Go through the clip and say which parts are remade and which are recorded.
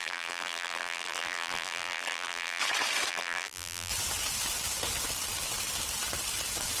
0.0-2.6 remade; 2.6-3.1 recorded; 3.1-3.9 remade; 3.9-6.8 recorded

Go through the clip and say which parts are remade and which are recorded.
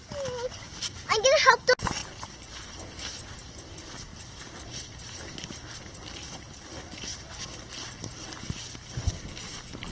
0.0-0.6 recorded; 0.6-1.5 remade; 1.5-9.9 recorded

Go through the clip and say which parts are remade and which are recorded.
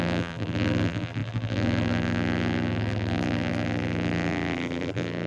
0.0-5.3 remade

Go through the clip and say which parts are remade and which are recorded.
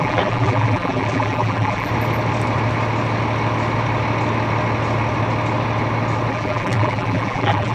0.0-1.9 remade; 1.9-6.3 recorded; 6.3-7.7 remade